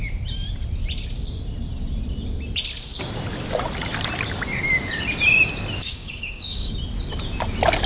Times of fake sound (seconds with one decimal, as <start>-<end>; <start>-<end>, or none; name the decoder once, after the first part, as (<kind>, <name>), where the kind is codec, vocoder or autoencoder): 5.8-6.7 (codec, DAC)